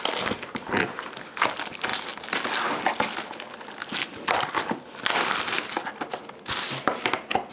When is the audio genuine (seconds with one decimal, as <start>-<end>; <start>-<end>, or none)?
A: 0.0-7.5